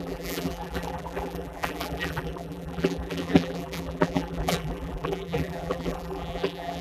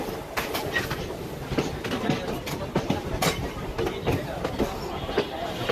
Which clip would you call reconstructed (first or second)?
first